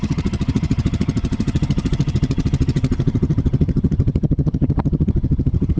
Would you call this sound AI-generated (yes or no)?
yes